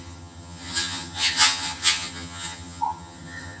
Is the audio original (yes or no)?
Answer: no